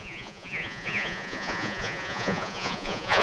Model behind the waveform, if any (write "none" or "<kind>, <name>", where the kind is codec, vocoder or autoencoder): vocoder, Vocos